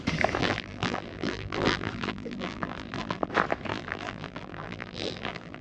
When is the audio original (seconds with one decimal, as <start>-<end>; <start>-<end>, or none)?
0.0-0.4; 3.3-3.7